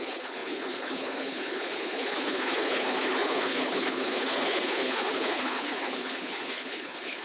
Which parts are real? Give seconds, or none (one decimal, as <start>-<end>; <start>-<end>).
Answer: none